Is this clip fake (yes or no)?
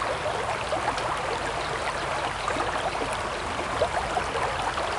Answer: no